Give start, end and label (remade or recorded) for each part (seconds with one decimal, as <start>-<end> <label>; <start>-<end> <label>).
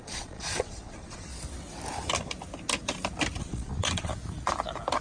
0.0-1.3 remade; 1.3-3.4 recorded; 3.4-4.1 remade; 4.1-5.0 recorded